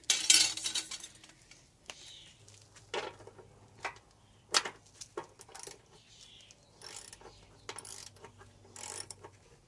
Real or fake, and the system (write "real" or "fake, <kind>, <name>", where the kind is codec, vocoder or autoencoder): real